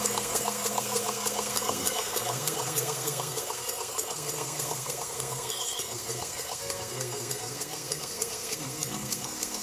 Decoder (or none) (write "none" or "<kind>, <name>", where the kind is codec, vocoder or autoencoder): codec, SNAC